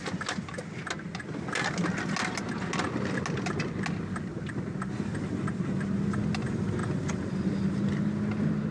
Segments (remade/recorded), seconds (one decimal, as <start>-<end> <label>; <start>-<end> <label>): 0.0-8.7 recorded